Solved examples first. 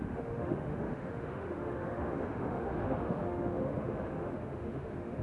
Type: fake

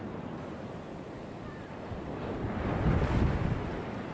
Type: real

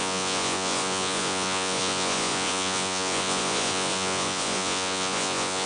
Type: fake